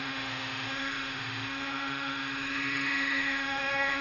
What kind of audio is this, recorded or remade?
remade